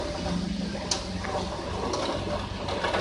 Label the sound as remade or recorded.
recorded